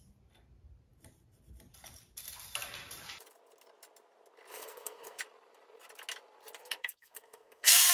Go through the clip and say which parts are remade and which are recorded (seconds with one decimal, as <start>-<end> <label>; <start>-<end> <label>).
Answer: 0.0-4.5 recorded; 4.5-5.2 remade; 5.2-6.6 recorded; 6.6-7.9 remade